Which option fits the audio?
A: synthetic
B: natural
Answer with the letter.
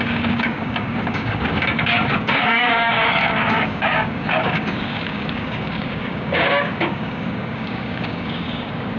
A